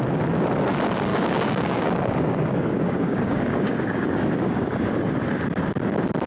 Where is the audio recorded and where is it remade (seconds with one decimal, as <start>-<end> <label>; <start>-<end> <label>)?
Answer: 0.0-1.1 recorded; 1.1-4.9 remade; 4.9-6.3 recorded